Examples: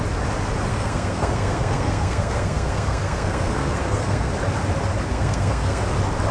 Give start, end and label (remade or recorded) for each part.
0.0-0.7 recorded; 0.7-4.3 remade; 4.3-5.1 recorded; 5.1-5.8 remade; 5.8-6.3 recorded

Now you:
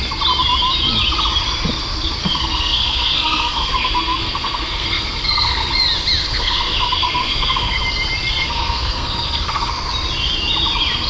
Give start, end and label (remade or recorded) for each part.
0.0-2.2 recorded; 2.2-5.7 remade; 5.7-6.2 recorded; 6.2-7.8 remade; 7.8-8.3 recorded; 8.3-9.7 remade; 9.7-11.1 recorded

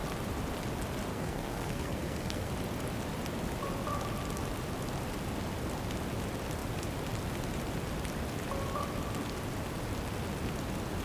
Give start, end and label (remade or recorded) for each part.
0.0-1.1 recorded; 1.1-2.5 remade; 2.5-11.0 recorded

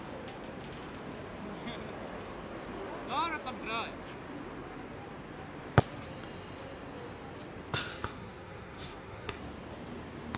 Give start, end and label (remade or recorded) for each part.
0.0-7.9 recorded; 7.9-9.4 remade; 9.4-10.4 recorded

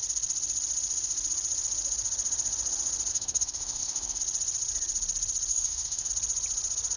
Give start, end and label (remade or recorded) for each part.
0.0-3.1 recorded; 3.1-4.2 remade; 4.2-5.5 recorded; 5.5-6.1 remade; 6.1-7.0 recorded

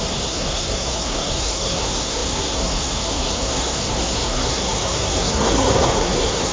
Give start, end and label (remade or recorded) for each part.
0.0-6.5 remade